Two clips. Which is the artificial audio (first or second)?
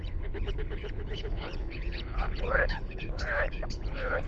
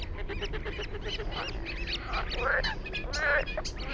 first